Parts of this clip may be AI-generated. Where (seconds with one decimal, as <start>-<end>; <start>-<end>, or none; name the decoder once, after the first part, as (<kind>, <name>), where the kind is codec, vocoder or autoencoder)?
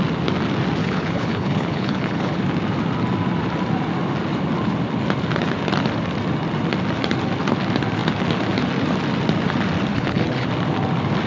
0.8-2.4 (codec, HILCodec); 9.9-10.5